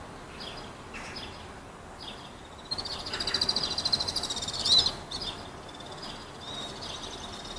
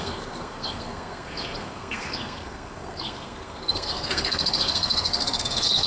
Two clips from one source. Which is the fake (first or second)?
second